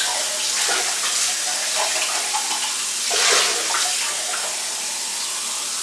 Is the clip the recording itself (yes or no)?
yes